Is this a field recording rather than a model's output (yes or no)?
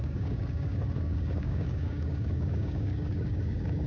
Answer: no